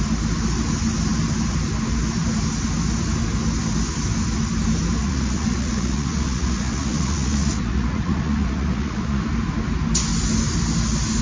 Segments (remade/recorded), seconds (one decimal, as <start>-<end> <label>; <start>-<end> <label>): 0.0-5.0 recorded; 5.0-9.2 remade; 9.2-11.2 recorded